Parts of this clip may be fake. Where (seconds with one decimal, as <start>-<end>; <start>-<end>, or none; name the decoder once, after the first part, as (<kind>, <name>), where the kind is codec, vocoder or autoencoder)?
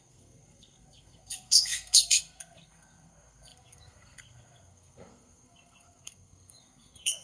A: 0.0-7.2 (codec, SNAC)